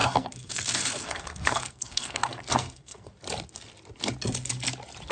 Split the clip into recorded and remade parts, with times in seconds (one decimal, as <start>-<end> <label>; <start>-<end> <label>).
0.0-3.1 remade; 3.1-5.1 recorded

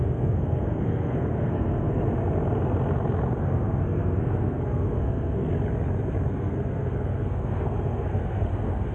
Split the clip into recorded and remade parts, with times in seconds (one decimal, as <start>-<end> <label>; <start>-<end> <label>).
0.0-2.0 remade; 2.0-3.4 recorded; 3.4-5.5 remade; 5.5-6.3 recorded; 6.3-8.9 remade

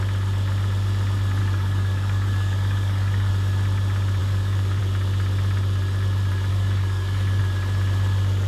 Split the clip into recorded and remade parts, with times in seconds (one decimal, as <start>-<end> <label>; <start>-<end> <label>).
0.0-1.4 recorded; 1.4-3.3 remade; 3.3-4.2 recorded; 4.2-4.8 remade; 4.8-6.5 recorded; 6.5-7.4 remade; 7.4-8.5 recorded

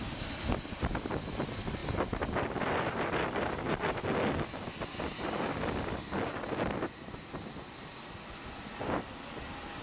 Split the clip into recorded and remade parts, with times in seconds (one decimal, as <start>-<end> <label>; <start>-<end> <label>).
0.0-9.8 recorded

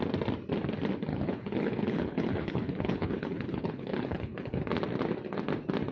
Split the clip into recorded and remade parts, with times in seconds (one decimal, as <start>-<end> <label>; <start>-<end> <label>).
0.0-1.1 recorded; 1.1-4.6 remade; 4.6-5.9 recorded

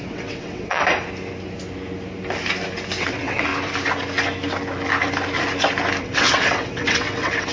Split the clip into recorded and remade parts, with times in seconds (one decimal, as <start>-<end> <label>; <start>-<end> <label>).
0.0-0.8 remade; 0.8-3.0 recorded; 3.0-3.5 remade; 3.5-6.0 recorded; 6.0-7.5 remade

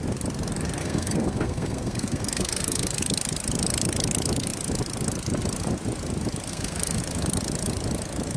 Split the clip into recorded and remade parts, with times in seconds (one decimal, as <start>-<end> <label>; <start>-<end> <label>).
0.0-0.8 recorded; 0.8-3.0 remade; 3.0-6.5 recorded; 6.5-7.0 remade; 7.0-8.4 recorded

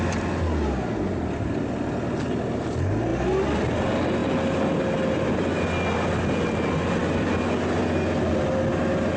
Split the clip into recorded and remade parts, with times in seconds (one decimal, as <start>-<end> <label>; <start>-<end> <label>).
0.0-9.2 recorded